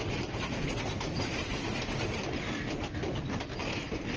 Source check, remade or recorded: recorded